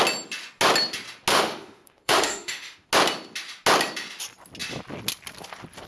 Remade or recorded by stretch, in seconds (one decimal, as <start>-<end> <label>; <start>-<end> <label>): 0.0-1.3 recorded; 1.3-2.9 remade; 2.9-5.9 recorded